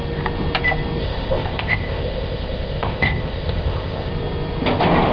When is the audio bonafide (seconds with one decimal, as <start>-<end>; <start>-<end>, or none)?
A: 0.0-1.0; 4.1-5.1